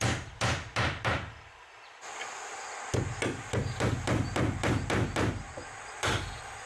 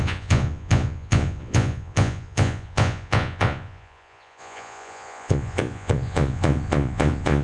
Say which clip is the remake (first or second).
second